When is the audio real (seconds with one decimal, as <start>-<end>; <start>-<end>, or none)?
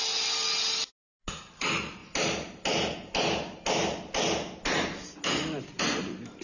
0.0-6.4